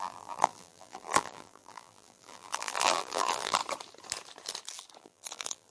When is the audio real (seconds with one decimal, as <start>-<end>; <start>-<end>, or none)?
3.6-5.0